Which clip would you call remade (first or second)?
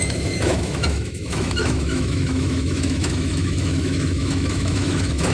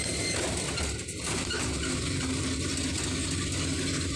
first